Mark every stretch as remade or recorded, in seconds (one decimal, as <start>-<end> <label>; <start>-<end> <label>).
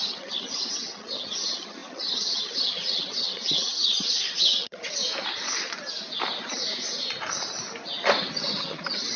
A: 0.0-5.0 remade; 5.0-8.3 recorded; 8.3-9.2 remade